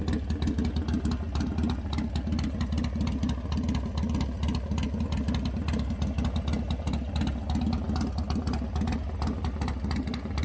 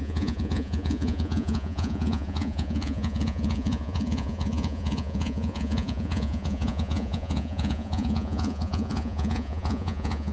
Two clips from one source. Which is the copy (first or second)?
second